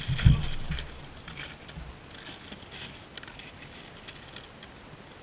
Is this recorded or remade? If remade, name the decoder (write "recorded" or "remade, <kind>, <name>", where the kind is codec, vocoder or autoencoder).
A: recorded